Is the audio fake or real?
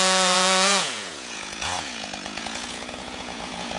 fake